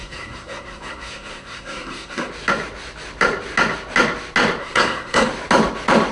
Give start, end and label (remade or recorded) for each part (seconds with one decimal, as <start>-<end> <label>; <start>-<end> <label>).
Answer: 0.0-2.3 remade; 2.3-4.6 recorded; 4.6-5.3 remade; 5.3-6.1 recorded

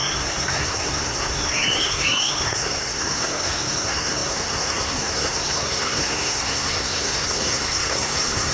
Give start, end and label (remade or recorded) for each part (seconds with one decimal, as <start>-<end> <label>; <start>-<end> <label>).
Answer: 0.0-8.5 remade

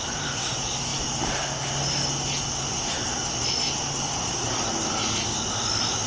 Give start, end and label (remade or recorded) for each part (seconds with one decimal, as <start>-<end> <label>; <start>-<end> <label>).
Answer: 0.0-6.1 recorded

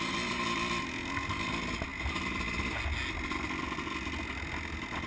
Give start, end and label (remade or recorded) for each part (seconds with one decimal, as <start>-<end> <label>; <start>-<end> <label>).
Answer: 0.0-5.1 recorded

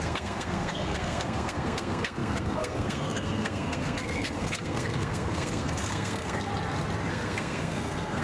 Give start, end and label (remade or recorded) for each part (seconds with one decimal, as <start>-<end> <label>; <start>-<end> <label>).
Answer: 0.0-6.5 remade; 6.5-7.1 recorded; 7.1-8.2 remade

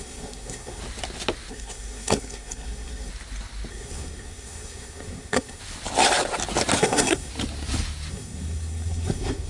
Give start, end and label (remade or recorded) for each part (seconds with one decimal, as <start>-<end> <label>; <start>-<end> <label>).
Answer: 0.0-0.8 remade; 0.8-1.5 recorded; 1.5-3.1 remade; 3.1-3.7 recorded; 3.7-5.6 remade; 5.6-6.8 recorded; 6.8-7.3 remade; 7.3-8.1 recorded; 8.1-9.5 remade